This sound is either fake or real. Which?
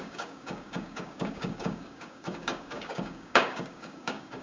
fake